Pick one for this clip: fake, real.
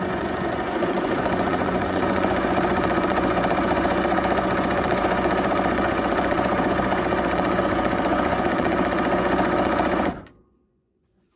fake